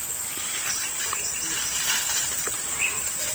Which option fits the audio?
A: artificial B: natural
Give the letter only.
B